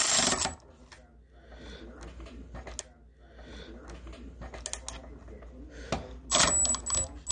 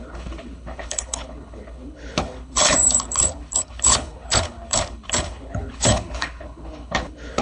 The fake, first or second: second